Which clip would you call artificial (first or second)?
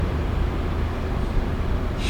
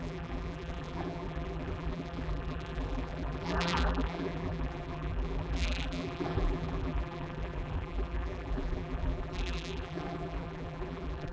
second